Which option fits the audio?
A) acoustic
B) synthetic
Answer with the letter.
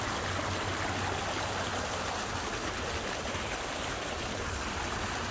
A